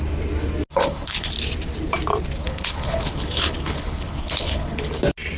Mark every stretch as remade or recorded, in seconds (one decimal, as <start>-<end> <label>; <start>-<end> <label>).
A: 0.0-0.7 recorded; 0.7-1.3 remade; 1.3-2.4 recorded; 2.4-4.9 remade; 4.9-5.4 recorded